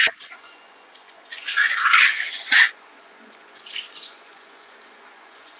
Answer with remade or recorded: remade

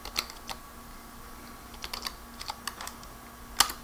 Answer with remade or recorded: recorded